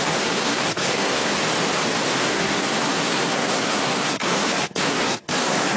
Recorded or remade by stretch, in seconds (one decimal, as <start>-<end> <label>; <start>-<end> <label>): 0.0-1.4 remade; 1.4-2.1 recorded; 2.1-5.8 remade